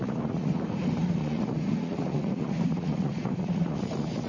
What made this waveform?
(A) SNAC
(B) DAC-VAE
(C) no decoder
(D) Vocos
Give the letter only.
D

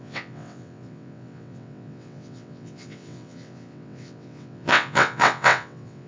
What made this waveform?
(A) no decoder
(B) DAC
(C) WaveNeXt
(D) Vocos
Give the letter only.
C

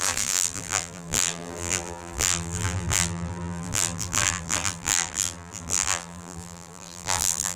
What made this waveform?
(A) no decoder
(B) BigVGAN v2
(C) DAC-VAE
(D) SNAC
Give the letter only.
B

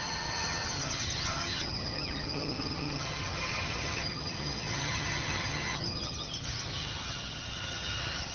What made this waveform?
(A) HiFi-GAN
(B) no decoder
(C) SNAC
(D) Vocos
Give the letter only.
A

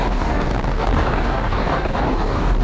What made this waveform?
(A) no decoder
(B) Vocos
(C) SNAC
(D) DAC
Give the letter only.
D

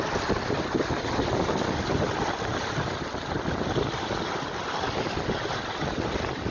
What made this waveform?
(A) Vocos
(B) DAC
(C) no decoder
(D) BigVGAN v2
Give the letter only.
C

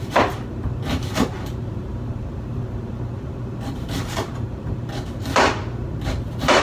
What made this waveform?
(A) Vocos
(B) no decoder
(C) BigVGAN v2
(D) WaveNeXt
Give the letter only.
C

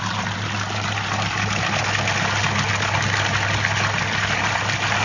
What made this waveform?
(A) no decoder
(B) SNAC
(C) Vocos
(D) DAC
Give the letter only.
A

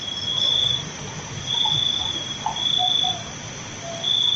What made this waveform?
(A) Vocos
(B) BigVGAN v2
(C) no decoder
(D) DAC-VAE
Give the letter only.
C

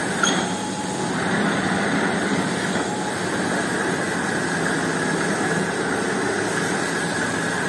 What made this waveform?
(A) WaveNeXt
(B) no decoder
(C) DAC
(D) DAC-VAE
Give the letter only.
B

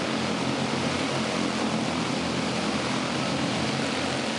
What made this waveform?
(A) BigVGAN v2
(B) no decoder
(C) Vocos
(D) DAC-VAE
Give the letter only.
B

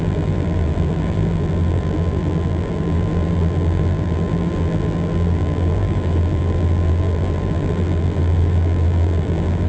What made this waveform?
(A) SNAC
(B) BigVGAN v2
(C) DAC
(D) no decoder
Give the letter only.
B